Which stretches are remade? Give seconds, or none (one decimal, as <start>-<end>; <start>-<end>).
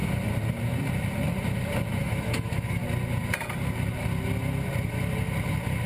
2.0-2.8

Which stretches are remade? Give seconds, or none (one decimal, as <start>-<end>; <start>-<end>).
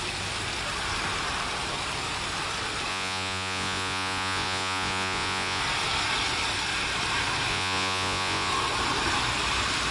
2.9-5.6; 7.5-8.5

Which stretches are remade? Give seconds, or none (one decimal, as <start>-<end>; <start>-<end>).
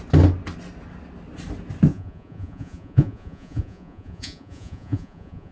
1.9-5.5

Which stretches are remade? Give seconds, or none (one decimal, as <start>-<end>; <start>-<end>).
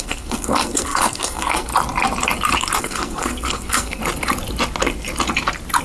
0.0-1.7; 2.8-4.0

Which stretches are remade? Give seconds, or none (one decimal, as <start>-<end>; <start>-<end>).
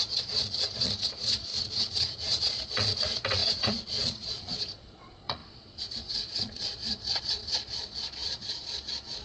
0.0-9.2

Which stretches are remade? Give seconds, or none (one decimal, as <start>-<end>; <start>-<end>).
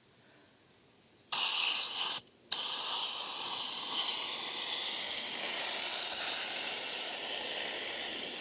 none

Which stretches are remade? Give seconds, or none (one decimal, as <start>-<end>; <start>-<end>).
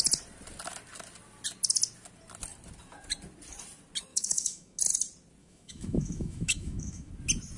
4.1-4.8; 5.4-7.1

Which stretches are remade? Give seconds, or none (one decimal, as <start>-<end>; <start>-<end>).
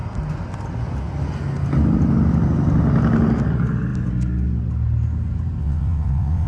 5.6-6.5